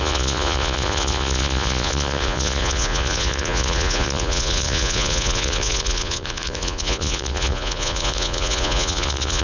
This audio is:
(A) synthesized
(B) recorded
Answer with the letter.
A